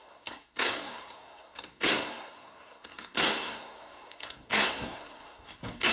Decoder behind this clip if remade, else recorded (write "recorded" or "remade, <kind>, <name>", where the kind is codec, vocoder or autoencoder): remade, codec, SNAC